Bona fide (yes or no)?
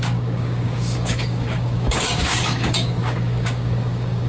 no